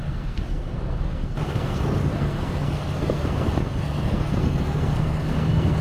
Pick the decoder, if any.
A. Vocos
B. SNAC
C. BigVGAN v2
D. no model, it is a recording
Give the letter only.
B